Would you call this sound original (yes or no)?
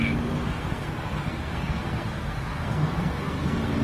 no